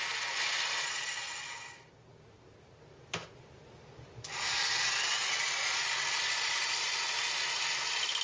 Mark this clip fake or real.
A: real